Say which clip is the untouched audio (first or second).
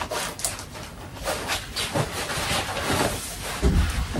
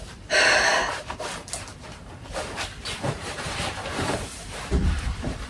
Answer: first